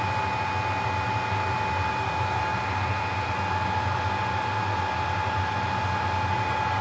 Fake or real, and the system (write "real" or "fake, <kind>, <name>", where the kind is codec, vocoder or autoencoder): real